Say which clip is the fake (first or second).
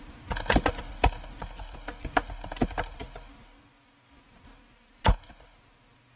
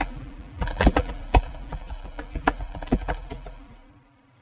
second